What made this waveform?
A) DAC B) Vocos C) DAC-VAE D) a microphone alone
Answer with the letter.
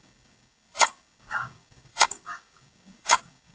A